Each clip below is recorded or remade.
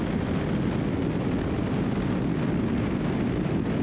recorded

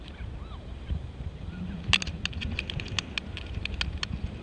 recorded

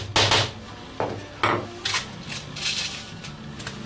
recorded